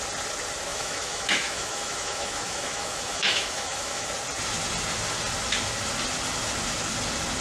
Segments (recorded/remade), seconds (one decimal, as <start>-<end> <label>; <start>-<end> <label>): 0.0-0.7 recorded; 0.7-4.1 remade; 4.1-7.4 recorded